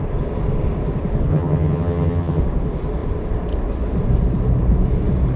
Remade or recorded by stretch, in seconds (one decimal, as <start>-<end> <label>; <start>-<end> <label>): 0.0-1.3 recorded; 1.3-2.4 remade; 2.4-5.4 recorded